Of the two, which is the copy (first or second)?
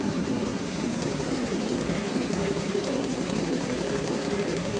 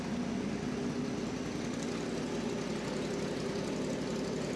first